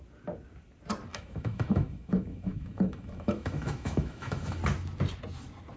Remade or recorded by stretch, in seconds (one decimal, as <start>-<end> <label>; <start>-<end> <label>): 0.0-1.1 recorded; 1.1-4.6 remade; 4.6-5.8 recorded